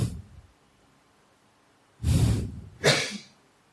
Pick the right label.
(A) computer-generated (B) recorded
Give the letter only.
B